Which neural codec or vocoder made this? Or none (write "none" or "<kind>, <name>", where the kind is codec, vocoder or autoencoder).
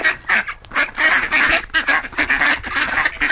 none